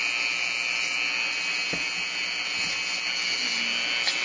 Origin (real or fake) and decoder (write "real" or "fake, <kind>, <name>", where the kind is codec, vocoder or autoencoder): real